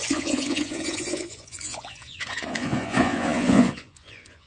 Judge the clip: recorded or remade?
remade